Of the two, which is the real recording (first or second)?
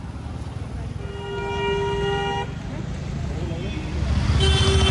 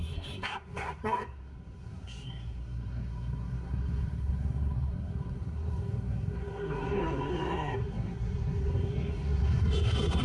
first